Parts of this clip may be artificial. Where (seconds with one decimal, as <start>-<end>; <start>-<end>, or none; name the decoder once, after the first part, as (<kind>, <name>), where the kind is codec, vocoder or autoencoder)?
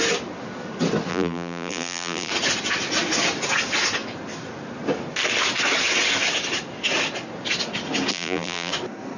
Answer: 1.1-2.3 (vocoder, BigVGAN v2); 8.1-8.7